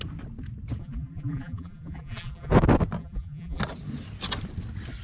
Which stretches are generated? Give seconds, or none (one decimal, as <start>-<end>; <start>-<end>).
0.8-2.5; 3.0-3.6